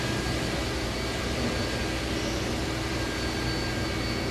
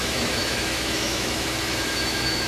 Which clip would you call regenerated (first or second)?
second